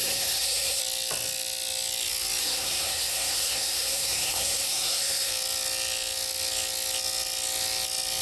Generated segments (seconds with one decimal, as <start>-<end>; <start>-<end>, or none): 0.0-0.8; 2.4-5.3